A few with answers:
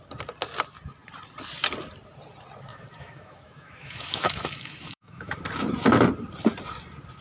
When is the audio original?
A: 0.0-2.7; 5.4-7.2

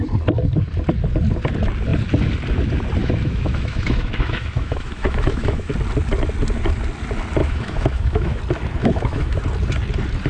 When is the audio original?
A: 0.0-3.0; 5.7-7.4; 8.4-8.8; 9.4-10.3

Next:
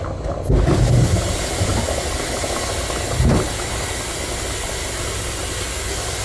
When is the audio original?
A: 0.0-6.2

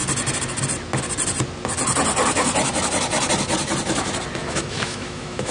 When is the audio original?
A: 0.0-4.4

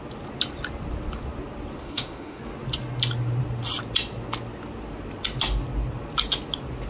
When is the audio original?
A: 0.0-1.8; 2.4-6.9